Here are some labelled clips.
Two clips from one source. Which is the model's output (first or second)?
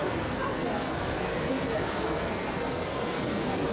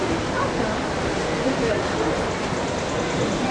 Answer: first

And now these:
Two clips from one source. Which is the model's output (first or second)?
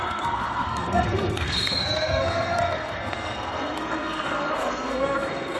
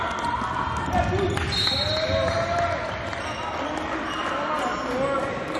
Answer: first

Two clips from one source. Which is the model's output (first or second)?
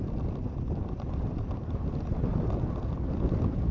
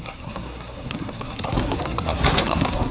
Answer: second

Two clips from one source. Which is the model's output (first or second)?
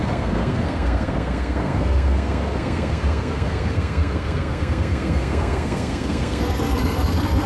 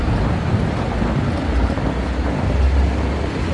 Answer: first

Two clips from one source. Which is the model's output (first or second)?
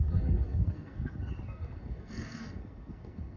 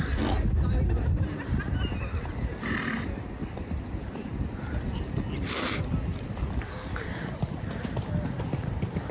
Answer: first